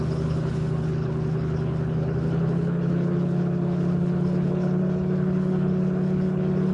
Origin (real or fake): fake